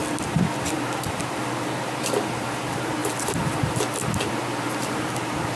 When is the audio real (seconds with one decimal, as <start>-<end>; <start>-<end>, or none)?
0.0-5.6